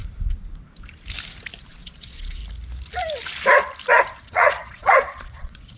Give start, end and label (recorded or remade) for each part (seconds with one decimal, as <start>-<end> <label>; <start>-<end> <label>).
0.0-1.7 recorded; 1.7-2.4 remade; 2.4-4.2 recorded; 4.2-5.8 remade